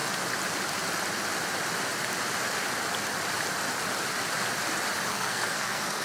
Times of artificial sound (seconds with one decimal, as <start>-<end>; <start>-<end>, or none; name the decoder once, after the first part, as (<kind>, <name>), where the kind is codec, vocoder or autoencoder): 5.1-6.0 (codec, SNAC)